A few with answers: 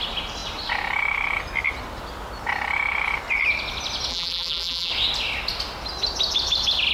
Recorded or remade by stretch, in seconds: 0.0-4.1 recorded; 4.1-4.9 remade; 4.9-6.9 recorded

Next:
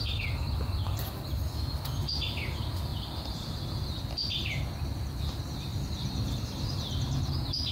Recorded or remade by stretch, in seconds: 0.0-2.9 recorded; 2.9-3.5 remade; 3.5-5.7 recorded; 5.7-6.4 remade; 6.4-7.7 recorded

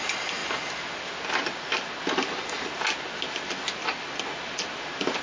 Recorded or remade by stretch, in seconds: 0.0-5.2 recorded

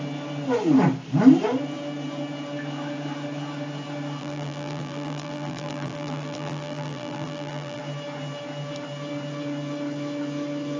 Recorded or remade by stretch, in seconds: 0.0-4.2 recorded; 4.2-7.8 remade; 7.8-10.8 recorded

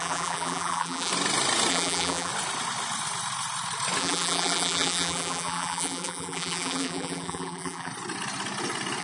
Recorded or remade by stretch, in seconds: 0.0-1.1 remade; 1.1-1.7 recorded; 1.7-2.3 remade; 2.3-4.0 recorded; 4.0-7.9 remade; 7.9-9.0 recorded

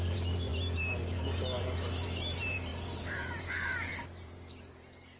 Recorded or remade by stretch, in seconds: 0.0-5.2 remade

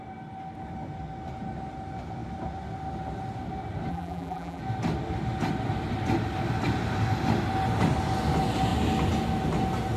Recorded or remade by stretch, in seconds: 0.0-3.9 recorded; 3.9-4.6 remade; 4.6-10.0 recorded

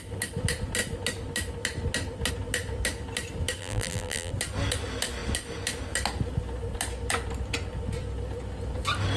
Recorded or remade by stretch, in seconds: 0.0-3.6 recorded; 3.6-4.3 remade; 4.3-9.2 recorded